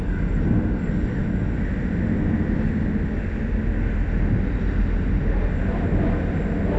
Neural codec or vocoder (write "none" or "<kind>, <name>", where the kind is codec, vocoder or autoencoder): none